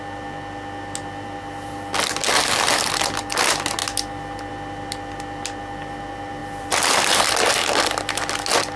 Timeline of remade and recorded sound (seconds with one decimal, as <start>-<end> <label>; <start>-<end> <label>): 0.0-6.4 recorded; 6.4-7.3 remade; 7.3-8.8 recorded